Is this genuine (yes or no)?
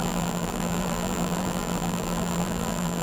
no